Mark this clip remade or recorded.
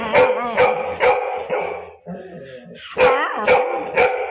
recorded